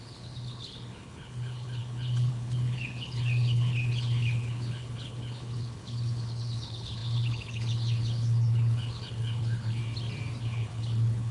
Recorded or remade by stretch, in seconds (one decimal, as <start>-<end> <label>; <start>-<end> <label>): 0.0-9.8 remade; 9.8-10.4 recorded; 10.4-11.3 remade